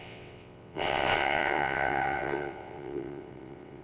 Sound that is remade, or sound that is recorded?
remade